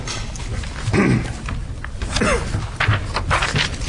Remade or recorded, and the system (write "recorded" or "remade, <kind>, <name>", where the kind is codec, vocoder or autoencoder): recorded